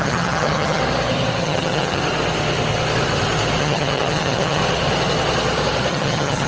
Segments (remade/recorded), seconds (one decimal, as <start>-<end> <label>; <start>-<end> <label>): 0.0-0.8 remade; 0.8-1.4 recorded; 1.4-2.0 remade; 2.0-3.6 recorded; 3.6-4.6 remade; 4.6-5.9 recorded; 5.9-6.5 remade